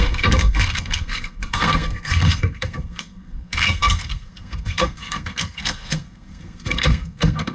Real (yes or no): no